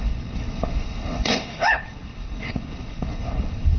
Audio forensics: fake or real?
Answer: fake